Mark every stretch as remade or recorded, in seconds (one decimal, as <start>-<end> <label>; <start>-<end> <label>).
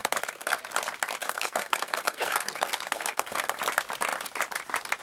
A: 0.0-0.6 remade; 0.6-1.2 recorded; 1.2-3.6 remade; 3.6-5.0 recorded